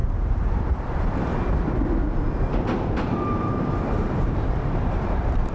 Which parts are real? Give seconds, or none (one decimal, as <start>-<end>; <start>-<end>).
1.3-2.5